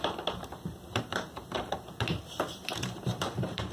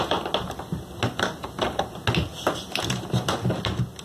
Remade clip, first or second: first